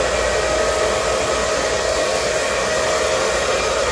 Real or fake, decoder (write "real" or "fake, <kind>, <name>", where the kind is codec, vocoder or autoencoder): real